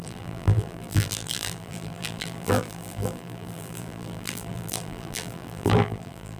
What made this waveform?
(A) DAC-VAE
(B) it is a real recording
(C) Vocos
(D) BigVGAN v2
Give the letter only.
D